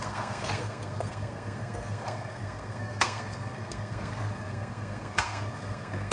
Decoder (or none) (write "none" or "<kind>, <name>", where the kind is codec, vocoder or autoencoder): codec, SNAC